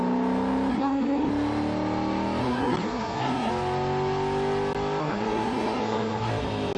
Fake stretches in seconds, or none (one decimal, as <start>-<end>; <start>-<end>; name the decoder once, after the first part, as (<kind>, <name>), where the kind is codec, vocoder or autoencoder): 0.7-1.3 (codec, SNAC); 2.4-3.5; 5.0-6.3